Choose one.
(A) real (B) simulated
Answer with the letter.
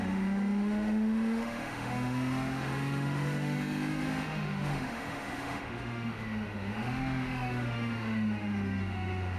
B